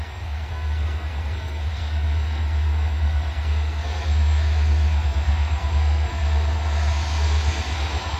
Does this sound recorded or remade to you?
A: remade